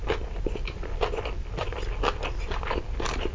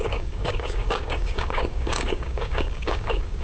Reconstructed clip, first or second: second